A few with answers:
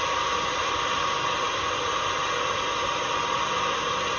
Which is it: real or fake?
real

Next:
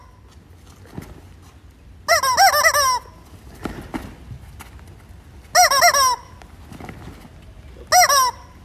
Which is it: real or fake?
real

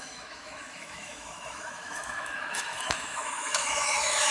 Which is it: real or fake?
fake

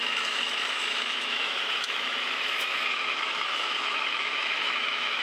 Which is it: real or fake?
fake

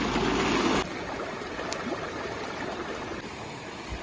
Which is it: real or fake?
real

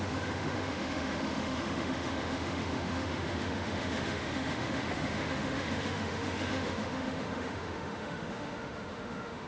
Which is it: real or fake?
fake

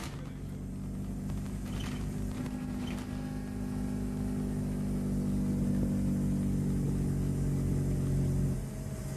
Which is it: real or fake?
real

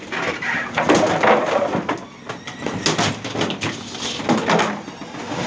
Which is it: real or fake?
real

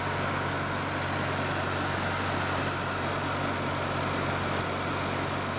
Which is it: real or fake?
real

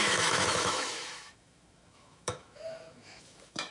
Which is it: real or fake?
fake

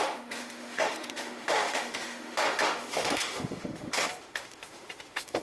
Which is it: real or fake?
fake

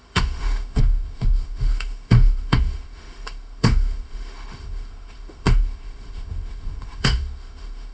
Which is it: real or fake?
fake